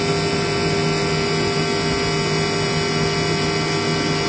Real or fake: real